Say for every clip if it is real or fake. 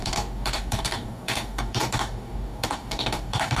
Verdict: fake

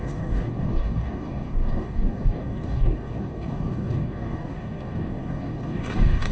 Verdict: fake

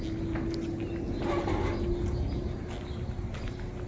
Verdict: real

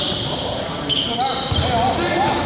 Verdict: real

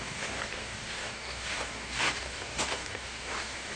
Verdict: fake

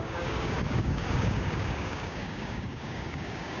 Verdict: fake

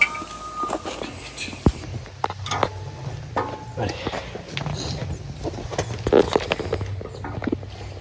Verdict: real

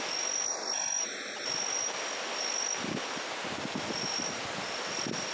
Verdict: real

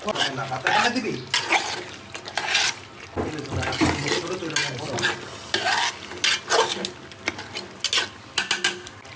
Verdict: real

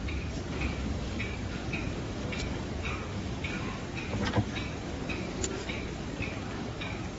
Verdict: fake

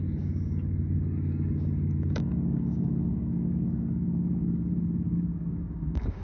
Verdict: fake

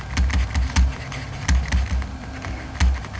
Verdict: real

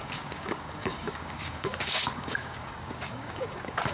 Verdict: fake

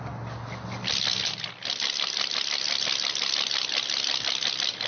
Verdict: real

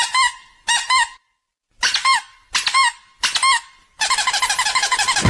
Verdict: real